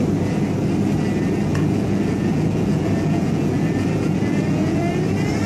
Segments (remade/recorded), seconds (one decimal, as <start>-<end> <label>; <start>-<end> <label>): 0.0-1.5 recorded; 1.5-4.8 remade; 4.8-5.5 recorded